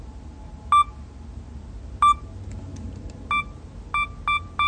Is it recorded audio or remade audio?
recorded